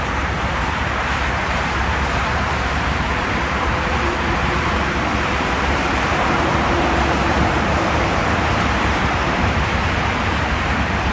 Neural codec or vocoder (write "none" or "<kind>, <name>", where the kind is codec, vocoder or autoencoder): vocoder, BigVGAN v2